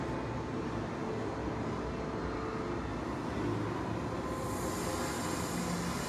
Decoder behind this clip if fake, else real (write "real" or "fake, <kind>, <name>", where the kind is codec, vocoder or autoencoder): real